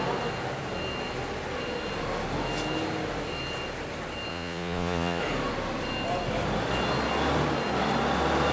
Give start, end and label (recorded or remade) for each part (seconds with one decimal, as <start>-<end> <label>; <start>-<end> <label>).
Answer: 0.0-4.3 recorded; 4.3-5.2 remade; 5.2-8.5 recorded